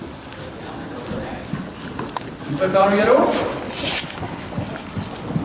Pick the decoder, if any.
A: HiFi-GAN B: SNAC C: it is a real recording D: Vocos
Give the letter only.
C